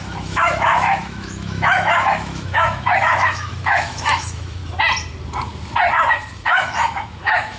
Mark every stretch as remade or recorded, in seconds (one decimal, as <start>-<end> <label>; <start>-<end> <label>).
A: 0.0-4.6 remade; 4.6-6.1 recorded; 6.1-7.6 remade